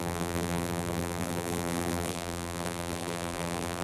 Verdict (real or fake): fake